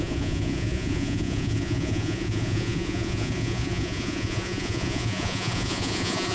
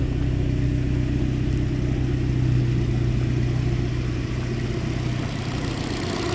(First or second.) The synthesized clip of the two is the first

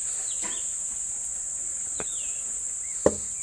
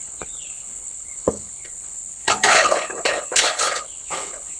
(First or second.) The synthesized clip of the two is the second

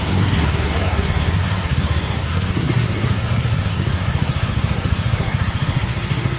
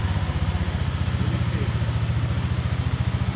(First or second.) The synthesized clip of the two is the first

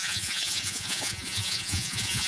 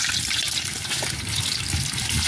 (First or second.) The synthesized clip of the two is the first